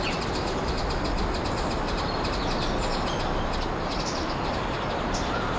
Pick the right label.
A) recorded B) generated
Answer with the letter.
A